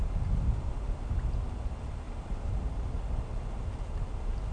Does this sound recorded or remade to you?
recorded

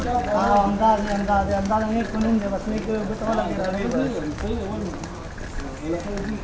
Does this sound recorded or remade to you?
recorded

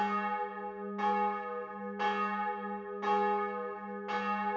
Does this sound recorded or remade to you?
recorded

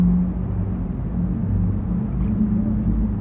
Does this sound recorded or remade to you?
recorded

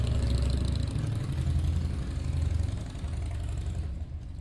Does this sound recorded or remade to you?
recorded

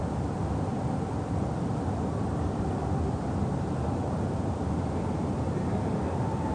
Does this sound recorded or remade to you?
recorded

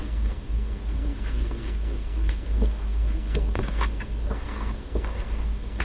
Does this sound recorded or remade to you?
remade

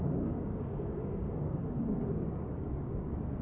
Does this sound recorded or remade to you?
remade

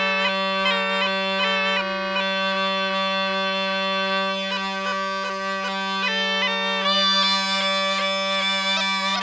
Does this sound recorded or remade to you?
recorded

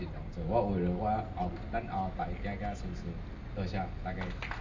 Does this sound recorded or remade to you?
recorded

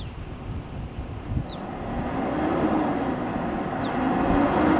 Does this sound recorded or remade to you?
recorded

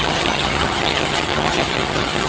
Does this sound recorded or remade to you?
remade